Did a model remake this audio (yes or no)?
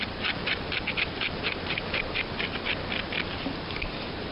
yes